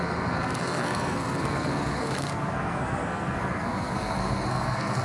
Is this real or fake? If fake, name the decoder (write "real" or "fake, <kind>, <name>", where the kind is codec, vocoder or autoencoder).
fake, codec, SNAC